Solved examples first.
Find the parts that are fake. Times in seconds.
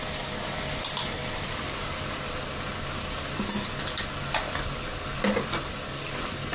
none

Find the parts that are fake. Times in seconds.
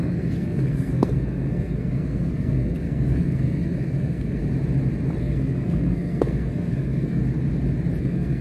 0.0-4.4 (codec, SNAC); 5.2-7.2; 8.0-8.4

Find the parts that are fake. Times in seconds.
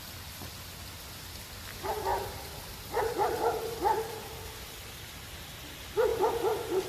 2.1-3.0 (vocoder, BigVGAN v2); 6.1-6.9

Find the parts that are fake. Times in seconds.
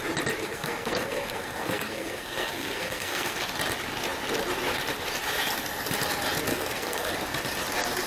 0.4-3.4 (codec, SNAC); 6.5-7.1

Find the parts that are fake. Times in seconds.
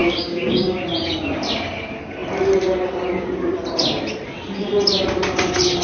0.0-0.8 (codec, DAC)